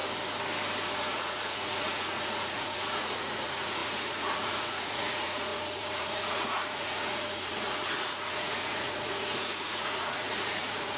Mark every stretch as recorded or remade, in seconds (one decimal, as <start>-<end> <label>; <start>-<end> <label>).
0.0-0.9 recorded; 0.9-11.0 remade